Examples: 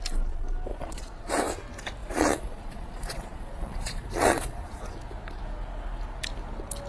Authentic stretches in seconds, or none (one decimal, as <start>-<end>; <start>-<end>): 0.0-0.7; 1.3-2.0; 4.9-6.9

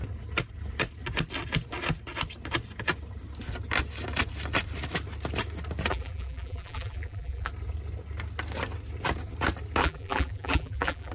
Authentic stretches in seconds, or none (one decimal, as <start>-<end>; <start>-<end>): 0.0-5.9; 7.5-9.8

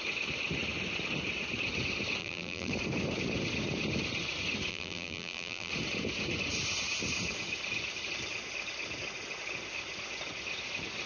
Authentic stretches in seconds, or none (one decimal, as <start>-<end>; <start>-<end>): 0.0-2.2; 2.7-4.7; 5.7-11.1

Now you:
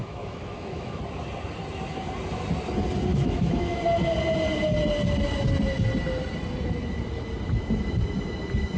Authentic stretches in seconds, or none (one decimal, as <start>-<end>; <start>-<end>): 1.0-3.1; 3.8-8.8

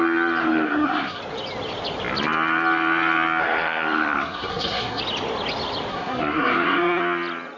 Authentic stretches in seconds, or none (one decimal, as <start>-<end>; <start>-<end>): 0.0-0.4; 1.2-3.4; 5.0-5.9; 7.0-7.6